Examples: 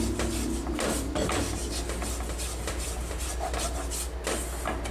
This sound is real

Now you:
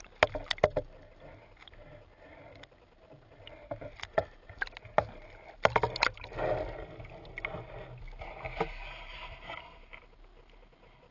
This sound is real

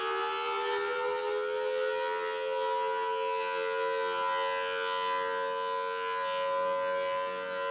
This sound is real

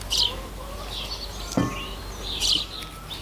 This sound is real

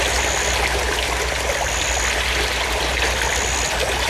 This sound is real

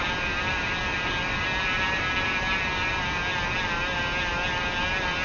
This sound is real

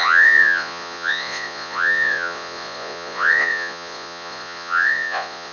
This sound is fake